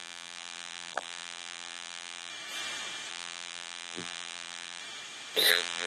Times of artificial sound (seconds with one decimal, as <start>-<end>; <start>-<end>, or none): 0.0-2.3; 3.1-4.8; 5.5-5.9